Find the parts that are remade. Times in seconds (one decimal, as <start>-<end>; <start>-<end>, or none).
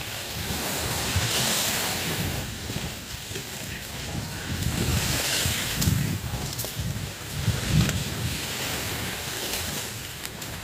0.0-10.6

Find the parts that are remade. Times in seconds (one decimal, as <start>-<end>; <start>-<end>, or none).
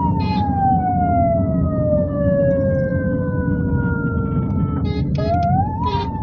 0.9-2.4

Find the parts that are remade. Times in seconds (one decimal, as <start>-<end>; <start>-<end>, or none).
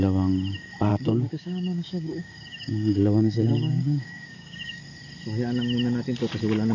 0.9-4.8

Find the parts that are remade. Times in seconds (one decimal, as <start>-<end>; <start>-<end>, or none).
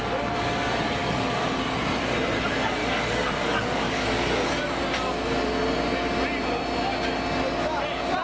1.0-1.6; 2.8-4.5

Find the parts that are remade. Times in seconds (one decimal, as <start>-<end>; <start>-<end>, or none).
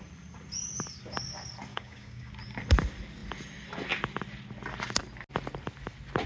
1.7-2.3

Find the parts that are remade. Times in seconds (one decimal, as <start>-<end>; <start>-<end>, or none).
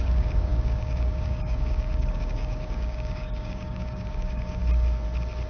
0.0-4.6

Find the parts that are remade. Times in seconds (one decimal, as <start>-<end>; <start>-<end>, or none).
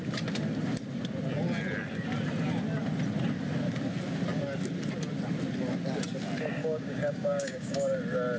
6.6-8.0